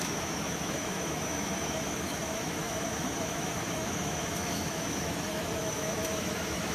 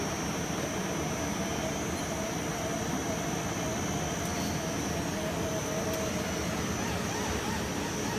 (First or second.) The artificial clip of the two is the first